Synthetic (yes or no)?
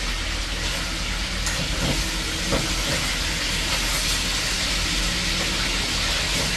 no